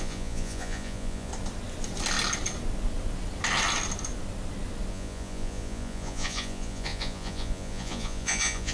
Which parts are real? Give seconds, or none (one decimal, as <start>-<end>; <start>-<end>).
1.3-4.9